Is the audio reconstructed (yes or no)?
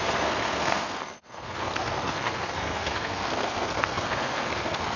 yes